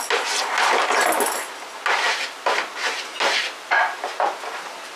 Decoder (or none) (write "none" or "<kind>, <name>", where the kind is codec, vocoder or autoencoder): none